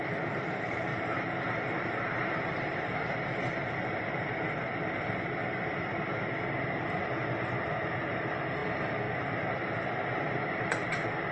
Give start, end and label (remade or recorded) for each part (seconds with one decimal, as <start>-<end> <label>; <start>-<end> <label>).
0.0-0.9 remade; 0.9-1.8 recorded; 1.8-5.9 remade; 5.9-6.6 recorded; 6.6-7.0 remade; 7.0-7.9 recorded; 7.9-8.6 remade; 8.6-10.2 recorded; 10.2-11.3 remade